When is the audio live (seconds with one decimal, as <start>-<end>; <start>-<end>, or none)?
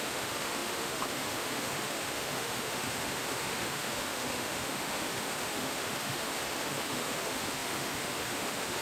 none